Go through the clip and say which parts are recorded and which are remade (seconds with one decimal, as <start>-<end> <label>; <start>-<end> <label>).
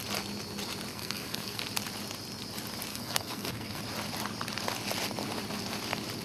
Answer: 0.0-0.9 recorded; 0.9-1.6 remade; 1.6-2.9 recorded; 2.9-3.8 remade; 3.8-6.2 recorded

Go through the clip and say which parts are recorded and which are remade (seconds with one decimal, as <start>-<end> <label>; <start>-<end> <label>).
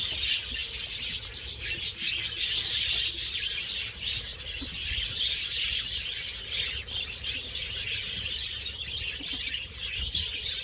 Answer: 0.0-10.6 recorded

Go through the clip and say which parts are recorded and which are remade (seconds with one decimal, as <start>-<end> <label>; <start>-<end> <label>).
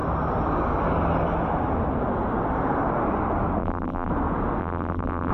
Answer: 0.0-3.6 recorded; 3.6-4.1 remade; 4.1-4.6 recorded; 4.6-5.3 remade